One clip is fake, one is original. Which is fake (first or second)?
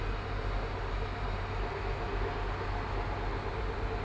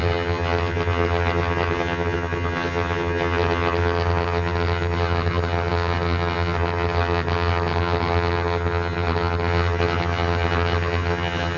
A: second